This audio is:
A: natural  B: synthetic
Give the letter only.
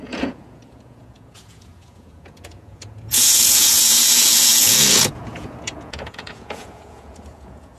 B